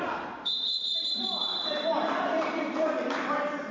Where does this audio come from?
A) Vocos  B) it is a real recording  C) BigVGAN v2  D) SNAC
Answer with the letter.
C